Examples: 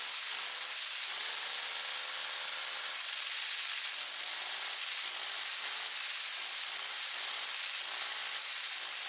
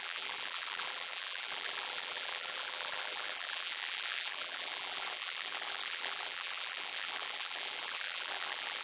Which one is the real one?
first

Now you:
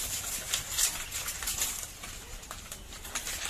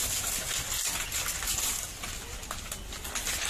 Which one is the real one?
second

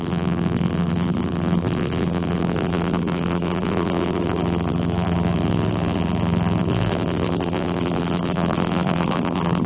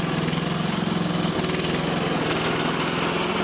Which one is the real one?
second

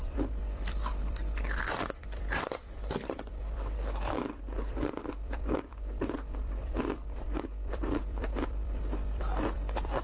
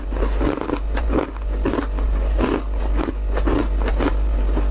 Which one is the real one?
second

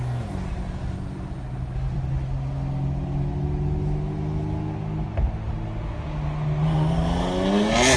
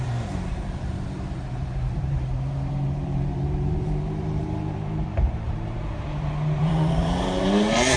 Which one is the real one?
first